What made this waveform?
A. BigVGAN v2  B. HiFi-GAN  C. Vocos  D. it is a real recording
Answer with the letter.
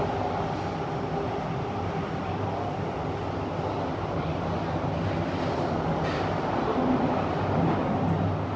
D